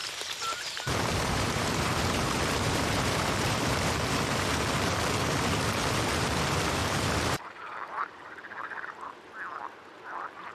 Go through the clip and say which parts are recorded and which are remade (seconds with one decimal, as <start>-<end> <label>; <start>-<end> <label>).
0.0-3.9 remade; 3.9-6.8 recorded; 6.8-9.1 remade; 9.1-10.5 recorded